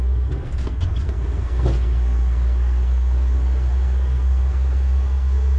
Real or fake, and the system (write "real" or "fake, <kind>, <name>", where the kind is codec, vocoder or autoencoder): fake, codec, SNAC